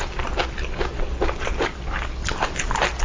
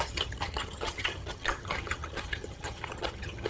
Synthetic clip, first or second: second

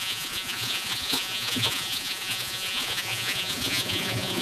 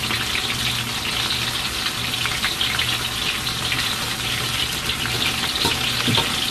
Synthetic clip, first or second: first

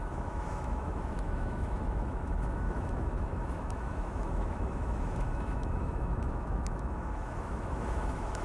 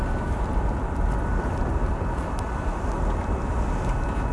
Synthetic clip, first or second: first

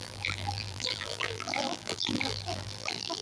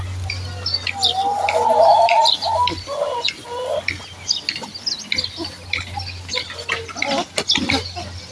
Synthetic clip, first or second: first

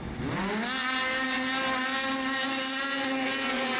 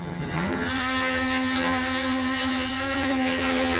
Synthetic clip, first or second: second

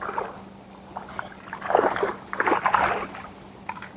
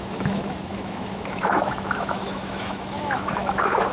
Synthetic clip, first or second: second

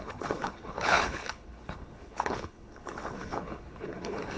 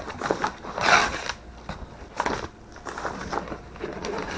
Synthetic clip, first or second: first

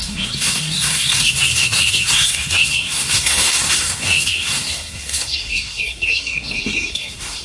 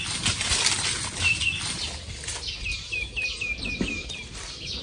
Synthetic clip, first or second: first